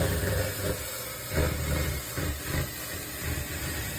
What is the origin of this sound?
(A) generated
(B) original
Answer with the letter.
B